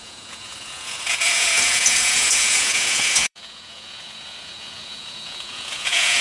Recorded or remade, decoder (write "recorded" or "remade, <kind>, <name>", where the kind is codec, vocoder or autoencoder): remade, vocoder, Vocos